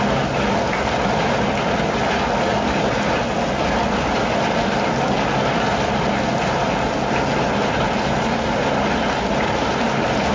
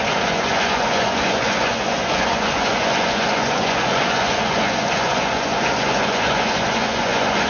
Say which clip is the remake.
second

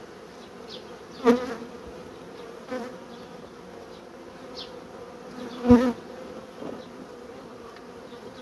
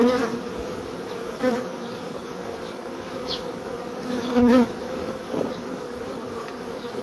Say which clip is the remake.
second